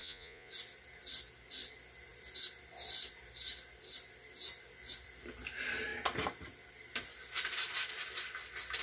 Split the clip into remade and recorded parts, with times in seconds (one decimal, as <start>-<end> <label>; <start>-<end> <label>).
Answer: 0.0-0.5 remade; 0.5-8.8 recorded